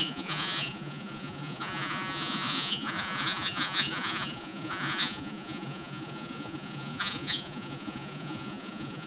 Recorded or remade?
remade